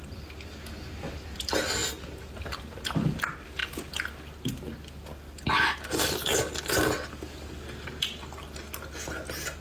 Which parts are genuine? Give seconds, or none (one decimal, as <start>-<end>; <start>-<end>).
0.0-9.6